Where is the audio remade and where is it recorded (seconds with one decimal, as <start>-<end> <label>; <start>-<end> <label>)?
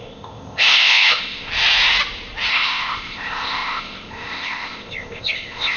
0.0-1.5 remade; 1.5-2.5 recorded; 2.5-5.8 remade